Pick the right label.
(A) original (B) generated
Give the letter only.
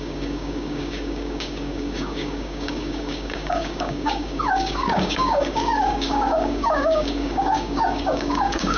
B